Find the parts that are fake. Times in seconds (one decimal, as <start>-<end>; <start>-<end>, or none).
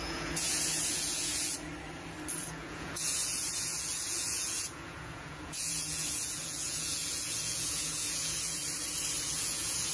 0.0-1.7; 2.4-8.6; 9.2-9.9